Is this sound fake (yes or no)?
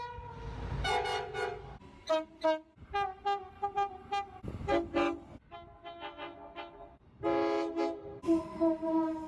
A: no